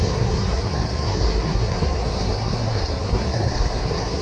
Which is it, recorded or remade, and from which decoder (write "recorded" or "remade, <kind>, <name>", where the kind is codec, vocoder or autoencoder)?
remade, codec, SNAC